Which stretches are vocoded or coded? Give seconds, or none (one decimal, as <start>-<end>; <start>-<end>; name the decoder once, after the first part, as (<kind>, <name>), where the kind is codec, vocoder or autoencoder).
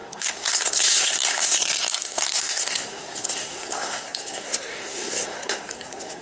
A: 0.0-6.2 (codec, SNAC)